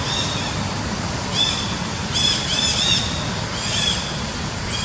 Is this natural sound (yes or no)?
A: yes